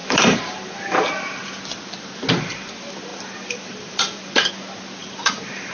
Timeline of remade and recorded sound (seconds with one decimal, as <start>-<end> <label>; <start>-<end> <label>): 0.0-1.6 remade; 1.6-3.1 recorded; 3.1-4.5 remade; 4.5-5.0 recorded; 5.0-5.7 remade